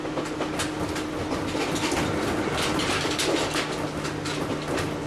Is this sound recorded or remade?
recorded